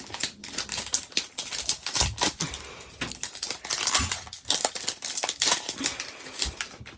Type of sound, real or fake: real